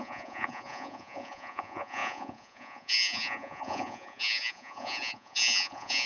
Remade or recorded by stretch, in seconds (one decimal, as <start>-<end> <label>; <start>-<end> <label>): 0.0-6.1 remade